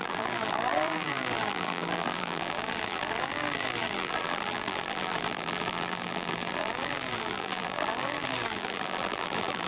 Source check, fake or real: fake